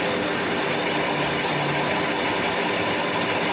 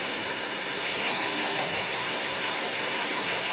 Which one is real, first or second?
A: first